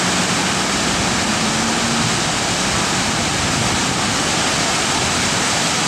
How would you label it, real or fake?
real